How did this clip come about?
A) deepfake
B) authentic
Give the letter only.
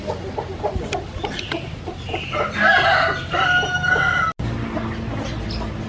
B